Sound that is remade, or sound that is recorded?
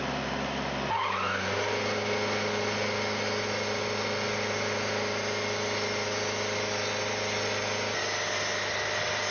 recorded